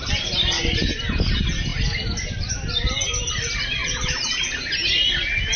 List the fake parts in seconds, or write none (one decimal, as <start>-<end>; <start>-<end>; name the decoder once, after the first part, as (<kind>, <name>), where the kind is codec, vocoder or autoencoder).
none